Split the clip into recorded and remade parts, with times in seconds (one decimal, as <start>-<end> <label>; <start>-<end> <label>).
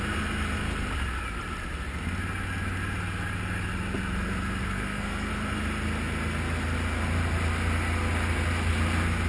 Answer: 0.0-4.6 recorded; 4.6-5.3 remade; 5.3-9.3 recorded